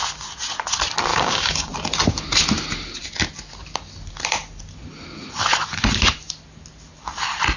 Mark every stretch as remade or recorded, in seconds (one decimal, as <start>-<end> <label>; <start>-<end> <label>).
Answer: 0.0-1.1 recorded; 1.1-1.7 remade; 1.7-7.6 recorded